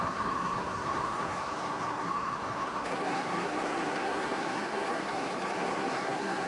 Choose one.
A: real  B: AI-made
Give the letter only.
B